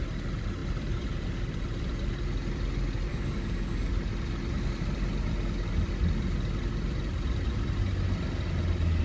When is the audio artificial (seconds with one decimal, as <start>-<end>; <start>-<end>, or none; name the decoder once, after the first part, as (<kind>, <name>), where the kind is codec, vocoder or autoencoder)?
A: 3.1-3.9 (codec, DAC)